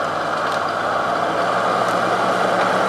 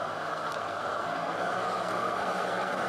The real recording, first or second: first